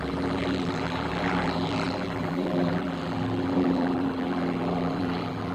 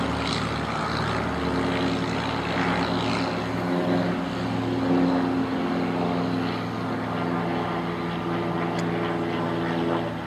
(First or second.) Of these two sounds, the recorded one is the second